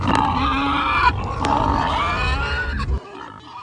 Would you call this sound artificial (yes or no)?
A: no